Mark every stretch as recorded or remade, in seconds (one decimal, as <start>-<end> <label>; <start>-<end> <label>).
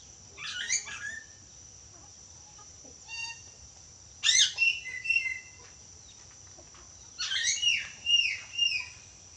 0.0-2.1 recorded; 2.1-3.9 remade; 3.9-7.5 recorded; 7.5-8.6 remade; 8.6-9.4 recorded